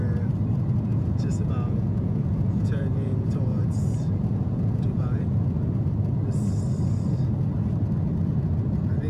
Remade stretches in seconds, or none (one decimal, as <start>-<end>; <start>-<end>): 0.9-5.2